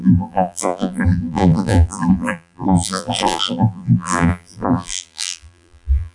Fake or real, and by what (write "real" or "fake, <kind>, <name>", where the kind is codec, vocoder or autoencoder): fake, vocoder, BigVGAN v2